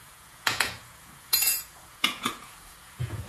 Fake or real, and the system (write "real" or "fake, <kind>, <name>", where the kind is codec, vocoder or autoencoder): fake, vocoder, Vocos